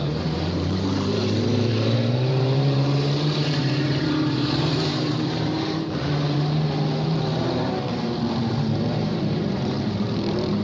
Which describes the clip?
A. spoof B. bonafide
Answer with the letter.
A